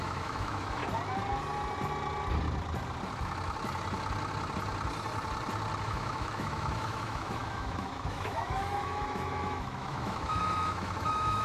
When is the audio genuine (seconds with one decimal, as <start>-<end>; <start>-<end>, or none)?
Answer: 0.8-5.8